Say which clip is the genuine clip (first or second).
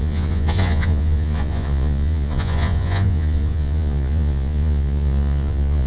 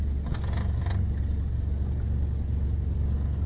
second